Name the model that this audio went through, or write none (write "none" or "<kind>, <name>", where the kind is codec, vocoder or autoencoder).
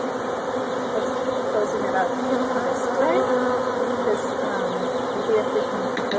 none